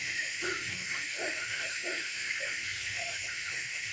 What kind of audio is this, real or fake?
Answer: fake